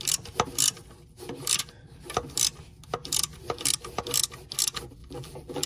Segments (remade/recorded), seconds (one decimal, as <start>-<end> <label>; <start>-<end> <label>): 0.0-5.0 recorded; 5.0-5.7 remade